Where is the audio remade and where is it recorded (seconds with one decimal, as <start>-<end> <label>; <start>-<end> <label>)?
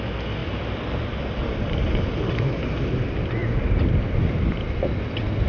0.0-0.4 recorded; 0.4-2.3 remade; 2.3-3.4 recorded; 3.4-3.9 remade; 3.9-5.5 recorded